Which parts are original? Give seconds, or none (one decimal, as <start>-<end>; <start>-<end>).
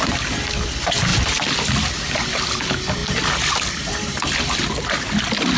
0.0-5.6